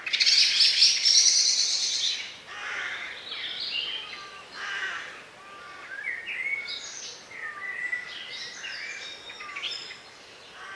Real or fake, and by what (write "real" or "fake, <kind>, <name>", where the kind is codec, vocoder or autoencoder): real